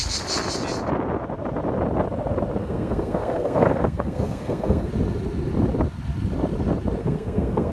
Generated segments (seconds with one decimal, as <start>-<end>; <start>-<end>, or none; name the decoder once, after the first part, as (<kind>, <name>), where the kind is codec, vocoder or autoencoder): 2.6-4.9 (codec, SNAC); 7.0-7.7